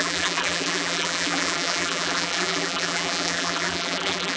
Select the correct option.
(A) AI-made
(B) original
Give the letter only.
A